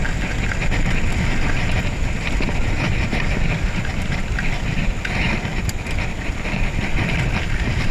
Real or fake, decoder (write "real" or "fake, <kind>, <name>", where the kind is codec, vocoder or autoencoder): real